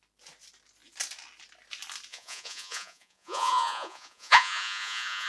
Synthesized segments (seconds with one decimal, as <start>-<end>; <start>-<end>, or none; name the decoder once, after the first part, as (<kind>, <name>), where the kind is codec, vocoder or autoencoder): 2.1-5.3 (vocoder, Vocos)